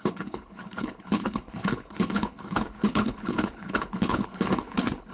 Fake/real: fake